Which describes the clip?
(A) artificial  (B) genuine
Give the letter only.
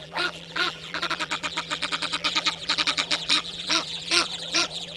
A